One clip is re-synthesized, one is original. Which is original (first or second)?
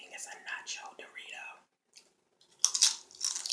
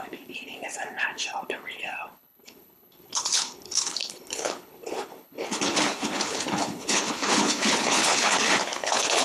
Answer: first